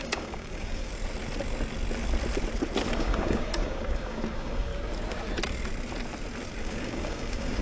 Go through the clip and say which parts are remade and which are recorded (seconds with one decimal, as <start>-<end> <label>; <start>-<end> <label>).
0.0-0.9 remade; 0.9-3.0 recorded; 3.0-4.7 remade; 4.7-6.6 recorded; 6.6-7.6 remade